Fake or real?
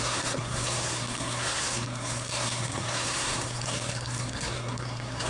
fake